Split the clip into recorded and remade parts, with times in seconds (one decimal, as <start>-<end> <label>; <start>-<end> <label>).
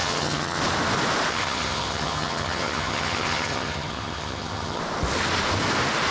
0.0-0.6 remade; 0.6-1.3 recorded; 1.3-4.8 remade; 4.8-6.1 recorded